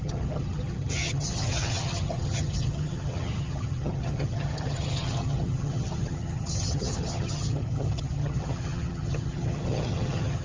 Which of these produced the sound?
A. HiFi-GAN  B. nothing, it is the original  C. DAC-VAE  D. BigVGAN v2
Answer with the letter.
A